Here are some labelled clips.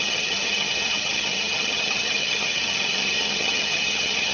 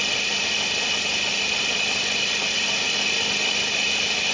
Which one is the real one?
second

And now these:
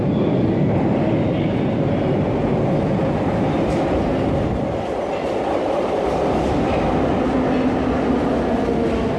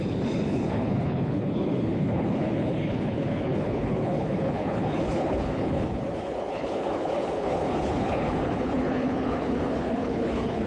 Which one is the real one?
first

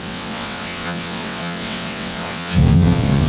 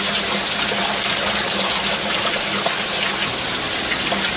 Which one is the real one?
second